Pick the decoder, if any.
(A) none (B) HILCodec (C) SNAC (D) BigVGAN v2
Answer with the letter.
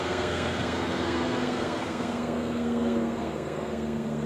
C